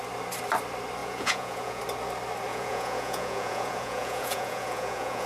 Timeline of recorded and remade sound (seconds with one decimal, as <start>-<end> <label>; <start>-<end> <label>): 0.0-1.0 recorded; 1.0-1.8 remade; 1.8-2.5 recorded; 2.5-5.3 remade